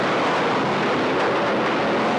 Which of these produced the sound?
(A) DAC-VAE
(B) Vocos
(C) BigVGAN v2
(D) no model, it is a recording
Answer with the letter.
D